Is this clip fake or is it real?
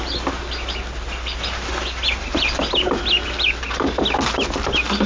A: real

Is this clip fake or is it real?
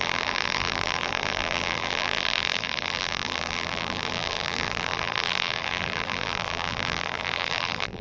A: fake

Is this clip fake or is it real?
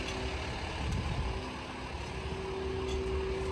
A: real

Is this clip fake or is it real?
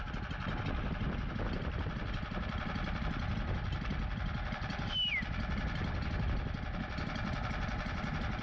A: real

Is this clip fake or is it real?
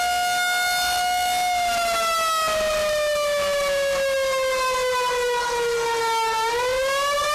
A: real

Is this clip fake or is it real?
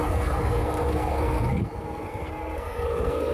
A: fake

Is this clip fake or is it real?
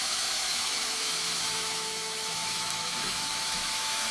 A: fake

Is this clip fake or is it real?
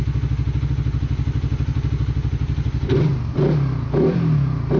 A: real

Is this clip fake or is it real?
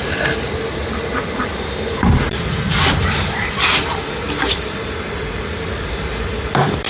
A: fake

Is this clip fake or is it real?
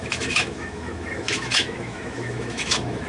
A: fake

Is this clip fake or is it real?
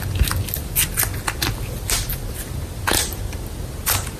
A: real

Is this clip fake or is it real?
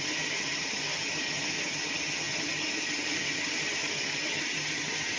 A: fake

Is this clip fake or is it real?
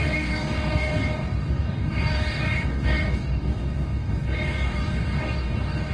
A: fake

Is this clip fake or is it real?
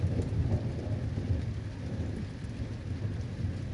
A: real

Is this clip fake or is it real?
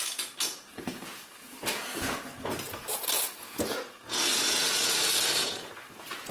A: fake